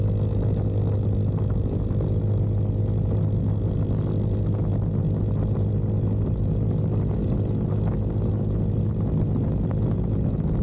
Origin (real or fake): real